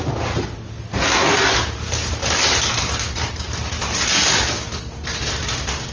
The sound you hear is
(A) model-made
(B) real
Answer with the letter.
B